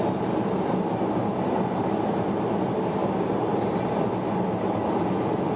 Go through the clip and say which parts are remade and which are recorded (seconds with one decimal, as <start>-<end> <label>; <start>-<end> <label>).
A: 0.0-5.6 recorded

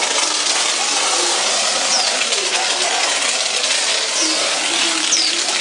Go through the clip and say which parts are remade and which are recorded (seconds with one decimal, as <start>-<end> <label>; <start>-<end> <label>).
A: 0.0-5.6 recorded

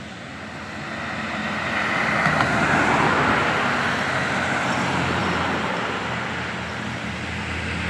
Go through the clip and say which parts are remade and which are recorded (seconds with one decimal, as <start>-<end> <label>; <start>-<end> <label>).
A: 0.0-5.2 recorded; 5.2-6.0 remade; 6.0-7.9 recorded

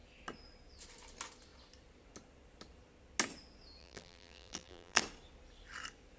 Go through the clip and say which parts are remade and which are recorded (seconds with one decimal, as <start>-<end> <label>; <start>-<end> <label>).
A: 0.0-3.8 recorded; 3.8-5.0 remade; 5.0-6.2 recorded

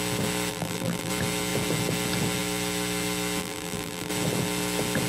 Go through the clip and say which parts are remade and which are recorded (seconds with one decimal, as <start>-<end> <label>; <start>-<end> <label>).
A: 0.0-0.5 recorded; 0.5-1.1 remade; 1.1-3.4 recorded; 3.4-4.1 remade; 4.1-5.1 recorded